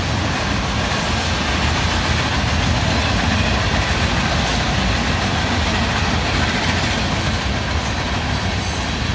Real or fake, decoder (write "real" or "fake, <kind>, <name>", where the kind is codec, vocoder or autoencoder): real